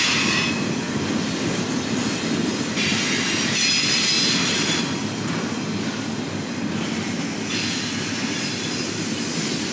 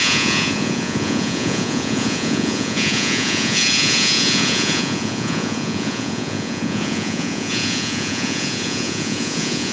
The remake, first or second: second